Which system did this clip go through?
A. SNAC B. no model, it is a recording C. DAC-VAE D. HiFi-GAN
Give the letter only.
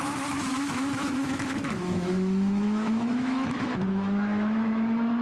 C